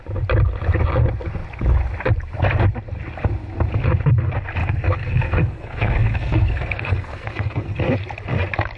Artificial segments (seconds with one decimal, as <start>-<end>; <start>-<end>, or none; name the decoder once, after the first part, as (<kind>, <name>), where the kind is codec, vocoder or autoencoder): 4.6-7.8 (codec, SNAC)